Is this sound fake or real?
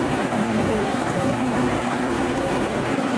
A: fake